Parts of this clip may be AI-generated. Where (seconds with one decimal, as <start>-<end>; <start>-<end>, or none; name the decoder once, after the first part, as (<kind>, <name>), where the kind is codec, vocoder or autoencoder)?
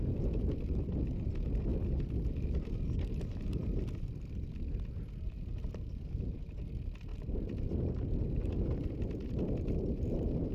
none